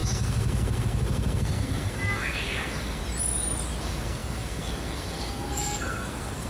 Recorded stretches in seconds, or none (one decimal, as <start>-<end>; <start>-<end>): 3.0-3.8